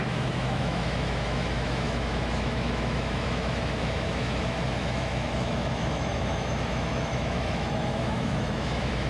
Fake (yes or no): yes